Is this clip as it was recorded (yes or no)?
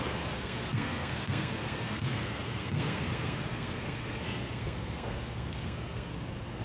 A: no